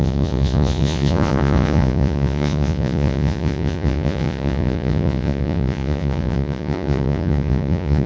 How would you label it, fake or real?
fake